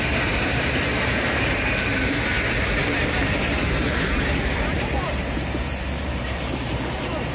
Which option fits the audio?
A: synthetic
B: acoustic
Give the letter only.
A